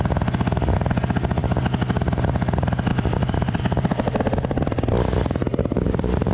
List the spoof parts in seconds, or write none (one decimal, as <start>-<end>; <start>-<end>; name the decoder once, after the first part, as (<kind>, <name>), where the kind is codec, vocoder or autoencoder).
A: 2.9-3.6 (vocoder, BigVGAN v2); 5.5-6.3